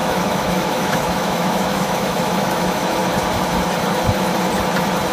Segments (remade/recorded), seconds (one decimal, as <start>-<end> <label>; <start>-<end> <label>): 0.0-3.0 remade; 3.0-5.1 recorded